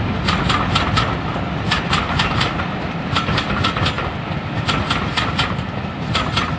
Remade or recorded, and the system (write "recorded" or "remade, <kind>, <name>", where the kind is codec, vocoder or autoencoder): recorded